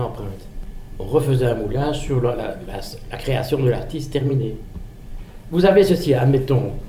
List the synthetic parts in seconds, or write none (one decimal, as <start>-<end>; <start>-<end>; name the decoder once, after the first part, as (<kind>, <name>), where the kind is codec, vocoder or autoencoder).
0.0-3.0 (vocoder, BigVGAN v2); 4.2-6.9